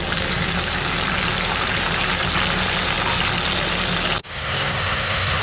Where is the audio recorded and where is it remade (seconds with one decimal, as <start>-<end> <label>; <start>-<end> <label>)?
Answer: 0.0-4.2 recorded; 4.2-5.4 remade